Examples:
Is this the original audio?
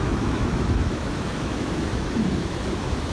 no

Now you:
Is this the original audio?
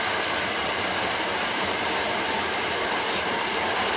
yes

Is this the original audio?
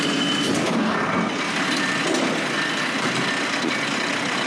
yes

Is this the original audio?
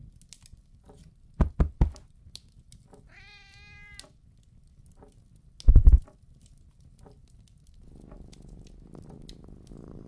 yes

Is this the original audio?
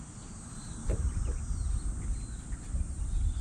yes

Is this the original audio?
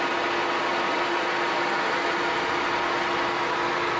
yes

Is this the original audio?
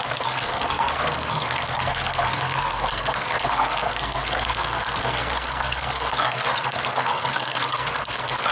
no